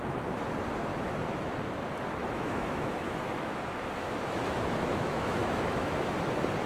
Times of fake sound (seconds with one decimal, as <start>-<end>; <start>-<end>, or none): 0.9-1.5; 2.2-6.0